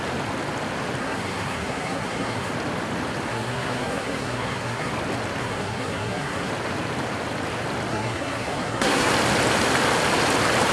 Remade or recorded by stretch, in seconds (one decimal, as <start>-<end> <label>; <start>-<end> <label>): 0.0-1.0 recorded; 1.0-2.5 remade; 2.5-3.3 recorded; 3.3-4.9 remade; 4.9-5.4 recorded; 5.4-6.5 remade; 6.5-7.9 recorded; 7.9-9.1 remade; 9.1-10.7 recorded